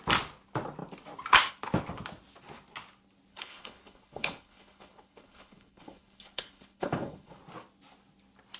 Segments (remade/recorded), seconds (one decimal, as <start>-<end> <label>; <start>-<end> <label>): 0.0-3.3 recorded; 3.3-7.4 remade; 7.4-8.6 recorded

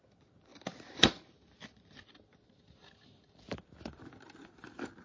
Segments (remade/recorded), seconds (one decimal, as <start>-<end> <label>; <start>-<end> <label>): 0.0-5.0 recorded

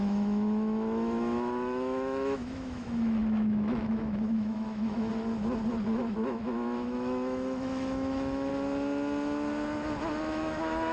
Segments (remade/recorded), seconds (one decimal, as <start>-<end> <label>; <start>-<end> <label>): 0.0-5.1 remade; 5.1-6.0 recorded; 6.0-8.5 remade; 8.5-10.3 recorded; 10.3-10.9 remade

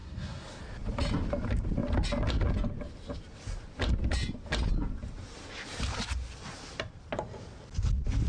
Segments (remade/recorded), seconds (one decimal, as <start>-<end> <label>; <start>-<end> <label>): 0.0-0.6 remade; 0.6-8.3 recorded